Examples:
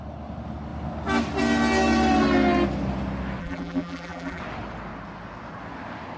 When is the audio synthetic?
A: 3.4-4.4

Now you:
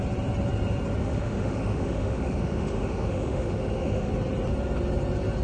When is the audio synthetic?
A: 1.0-4.1

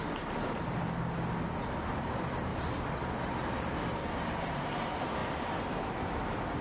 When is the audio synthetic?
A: 1.9-2.5; 3.0-5.2